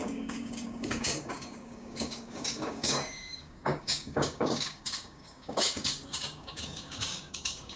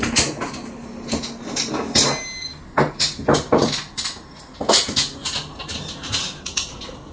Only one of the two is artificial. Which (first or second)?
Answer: first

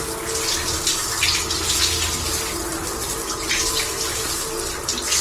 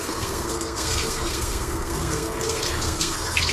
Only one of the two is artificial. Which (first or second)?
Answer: second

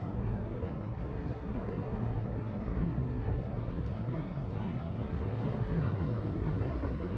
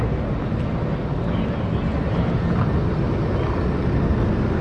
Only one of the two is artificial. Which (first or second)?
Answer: first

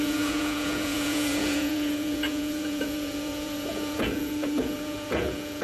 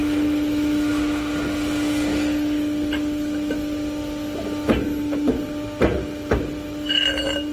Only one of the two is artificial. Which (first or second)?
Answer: first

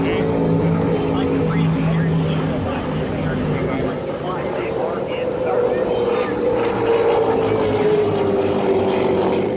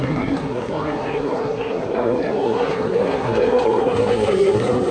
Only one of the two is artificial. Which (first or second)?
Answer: second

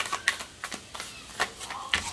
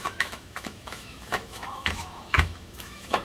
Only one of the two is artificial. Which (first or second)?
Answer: second